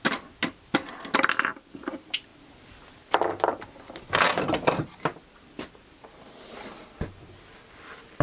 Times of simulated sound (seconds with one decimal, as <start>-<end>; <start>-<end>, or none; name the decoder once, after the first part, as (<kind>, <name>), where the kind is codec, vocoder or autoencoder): none